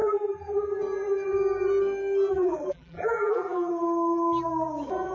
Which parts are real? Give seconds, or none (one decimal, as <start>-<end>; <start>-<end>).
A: 0.7-2.3; 3.7-5.1